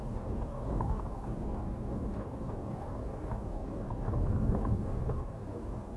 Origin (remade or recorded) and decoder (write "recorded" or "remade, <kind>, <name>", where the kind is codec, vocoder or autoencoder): remade, codec, DAC